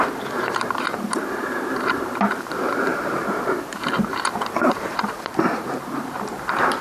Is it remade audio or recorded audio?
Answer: remade